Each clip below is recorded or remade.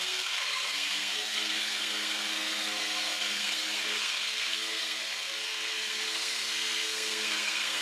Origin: remade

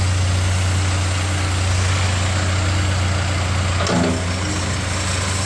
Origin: recorded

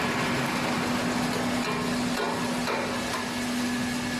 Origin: recorded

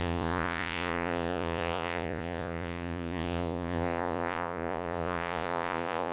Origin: remade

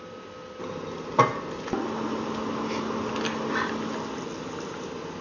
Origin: recorded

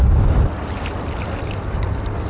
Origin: recorded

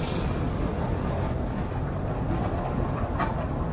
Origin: recorded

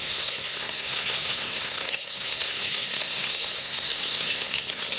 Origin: remade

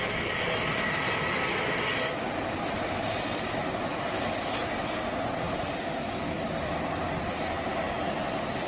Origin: recorded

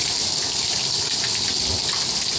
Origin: recorded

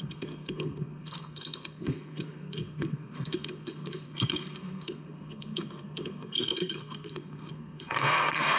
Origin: remade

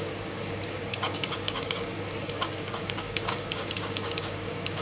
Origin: remade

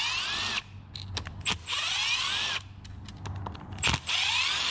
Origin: recorded